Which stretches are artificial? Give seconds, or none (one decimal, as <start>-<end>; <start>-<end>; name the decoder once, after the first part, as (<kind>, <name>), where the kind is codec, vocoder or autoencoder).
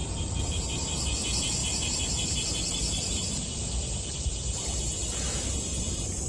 0.0-6.3 (vocoder, BigVGAN v2)